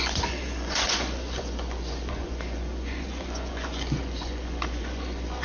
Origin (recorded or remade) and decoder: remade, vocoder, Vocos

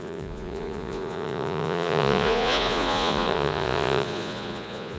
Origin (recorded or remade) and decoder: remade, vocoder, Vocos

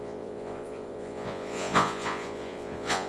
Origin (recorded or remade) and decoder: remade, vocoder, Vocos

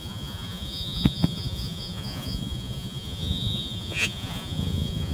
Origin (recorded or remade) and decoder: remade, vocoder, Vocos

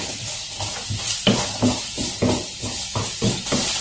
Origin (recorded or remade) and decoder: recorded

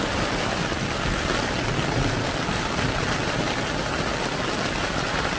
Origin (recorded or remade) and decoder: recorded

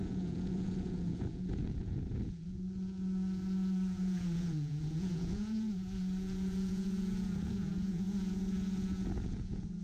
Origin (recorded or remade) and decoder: remade, vocoder, Vocos